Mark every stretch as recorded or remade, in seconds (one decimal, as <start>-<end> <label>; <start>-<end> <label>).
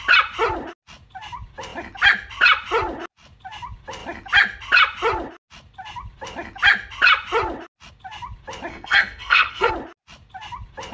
0.0-8.7 recorded; 8.7-9.7 remade; 9.7-10.9 recorded